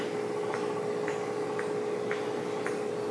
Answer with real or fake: real